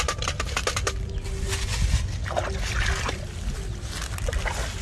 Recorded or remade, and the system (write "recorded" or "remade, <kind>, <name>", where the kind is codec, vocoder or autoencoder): recorded